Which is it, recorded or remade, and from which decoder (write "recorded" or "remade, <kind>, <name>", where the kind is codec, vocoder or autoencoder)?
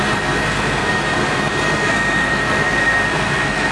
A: remade, codec, SNAC